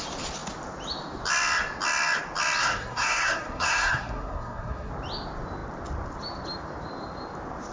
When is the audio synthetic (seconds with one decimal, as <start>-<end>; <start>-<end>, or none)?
2.6-4.9